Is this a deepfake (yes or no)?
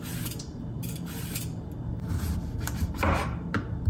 yes